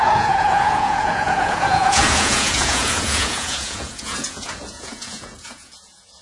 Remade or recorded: remade